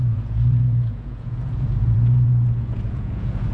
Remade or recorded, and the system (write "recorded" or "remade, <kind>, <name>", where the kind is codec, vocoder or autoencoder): remade, vocoder, Vocos